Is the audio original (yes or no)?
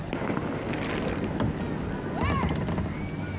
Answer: yes